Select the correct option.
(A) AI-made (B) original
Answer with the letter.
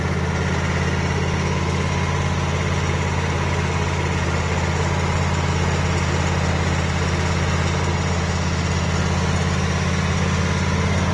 B